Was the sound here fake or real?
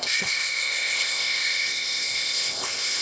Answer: fake